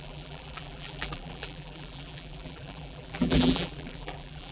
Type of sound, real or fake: fake